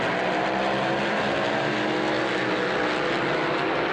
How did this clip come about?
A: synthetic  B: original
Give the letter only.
B